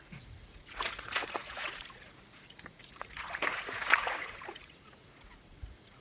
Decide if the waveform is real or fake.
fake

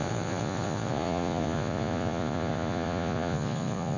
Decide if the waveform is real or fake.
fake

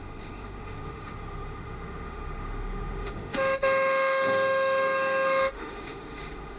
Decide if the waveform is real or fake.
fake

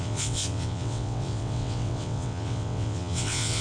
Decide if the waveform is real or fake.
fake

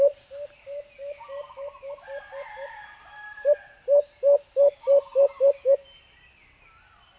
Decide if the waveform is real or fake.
real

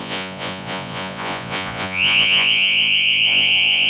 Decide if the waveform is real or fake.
fake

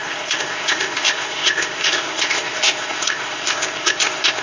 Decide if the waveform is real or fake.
fake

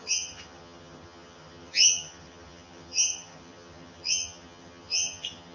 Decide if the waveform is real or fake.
fake